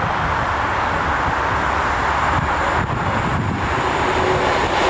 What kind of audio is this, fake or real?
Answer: real